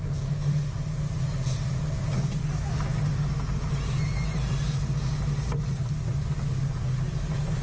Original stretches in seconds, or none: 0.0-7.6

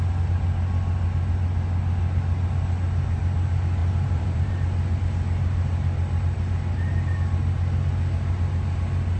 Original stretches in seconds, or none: 0.0-3.8; 4.5-9.2

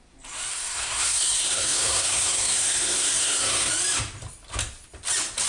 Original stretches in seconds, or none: 0.0-0.5; 3.7-5.5

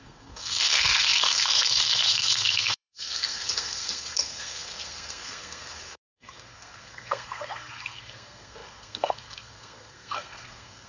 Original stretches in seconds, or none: none